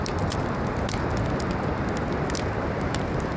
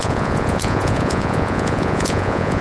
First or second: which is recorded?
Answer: first